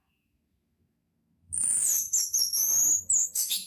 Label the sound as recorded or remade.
remade